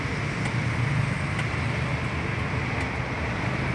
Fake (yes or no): no